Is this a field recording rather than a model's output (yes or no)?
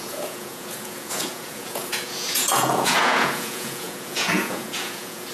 no